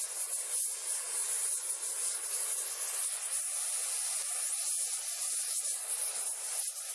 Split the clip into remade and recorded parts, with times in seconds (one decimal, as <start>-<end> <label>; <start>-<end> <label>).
0.0-6.9 recorded